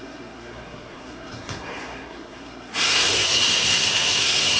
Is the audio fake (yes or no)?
yes